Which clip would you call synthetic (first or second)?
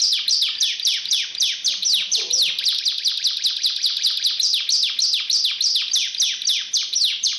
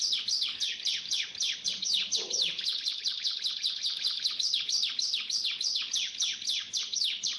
second